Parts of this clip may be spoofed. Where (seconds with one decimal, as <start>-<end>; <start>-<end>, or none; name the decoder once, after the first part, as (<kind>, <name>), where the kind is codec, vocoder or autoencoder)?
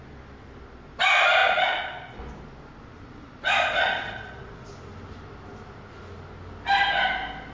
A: 1.4-2.2 (vocoder, Vocos); 2.9-4.7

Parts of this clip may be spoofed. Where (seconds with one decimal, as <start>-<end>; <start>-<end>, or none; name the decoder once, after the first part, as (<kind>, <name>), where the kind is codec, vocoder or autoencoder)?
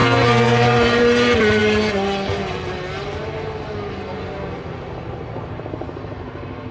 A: none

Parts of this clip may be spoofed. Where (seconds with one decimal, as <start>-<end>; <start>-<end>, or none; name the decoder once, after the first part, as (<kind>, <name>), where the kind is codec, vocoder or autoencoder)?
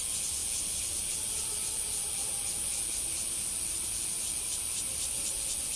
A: none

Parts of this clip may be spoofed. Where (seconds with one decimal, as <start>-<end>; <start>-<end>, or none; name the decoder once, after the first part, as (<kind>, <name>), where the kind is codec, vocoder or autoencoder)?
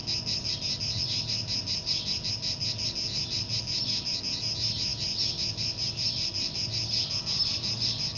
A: none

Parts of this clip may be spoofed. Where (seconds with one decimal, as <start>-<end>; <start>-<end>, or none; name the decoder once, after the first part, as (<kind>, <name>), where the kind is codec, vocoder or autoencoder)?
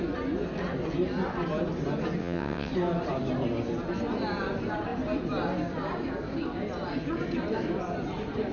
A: 2.2-2.7 (vocoder, WaveNeXt)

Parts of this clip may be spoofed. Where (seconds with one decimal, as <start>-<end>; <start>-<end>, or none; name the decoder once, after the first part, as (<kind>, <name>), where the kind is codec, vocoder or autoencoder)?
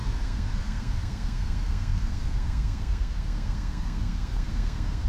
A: 0.0-5.1 (codec, SNAC)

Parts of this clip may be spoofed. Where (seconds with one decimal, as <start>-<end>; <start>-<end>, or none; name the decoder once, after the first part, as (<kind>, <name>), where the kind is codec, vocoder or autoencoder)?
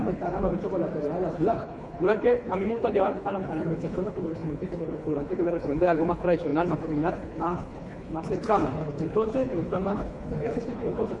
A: 0.0-0.7 (codec, HILCodec); 1.3-11.2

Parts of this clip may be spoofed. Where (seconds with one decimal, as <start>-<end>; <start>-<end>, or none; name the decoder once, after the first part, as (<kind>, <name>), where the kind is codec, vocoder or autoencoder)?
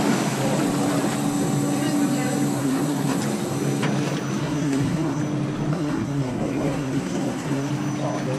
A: 2.6-3.2 (codec, SNAC); 4.4-5.2; 5.7-7.7